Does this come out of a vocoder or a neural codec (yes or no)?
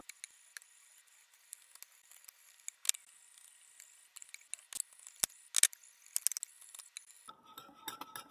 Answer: no